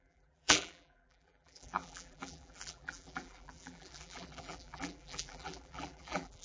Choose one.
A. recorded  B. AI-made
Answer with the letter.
B